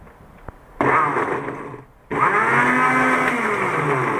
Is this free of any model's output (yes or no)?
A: yes